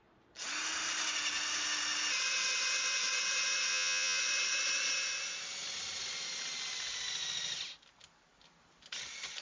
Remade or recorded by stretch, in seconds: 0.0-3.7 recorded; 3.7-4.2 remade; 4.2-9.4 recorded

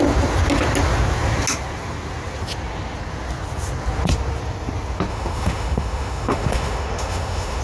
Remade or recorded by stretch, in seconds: 0.0-5.1 recorded; 5.1-7.6 remade